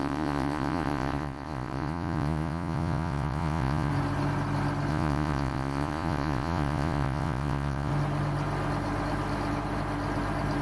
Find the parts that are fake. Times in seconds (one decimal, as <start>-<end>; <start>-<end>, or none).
0.0-3.9; 4.9-7.9